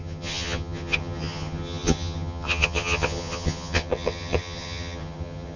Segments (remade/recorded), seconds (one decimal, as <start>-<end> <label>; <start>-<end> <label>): 0.0-5.6 remade